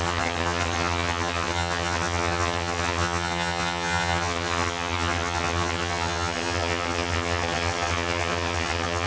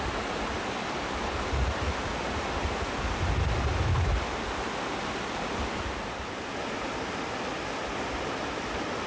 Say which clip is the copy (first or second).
first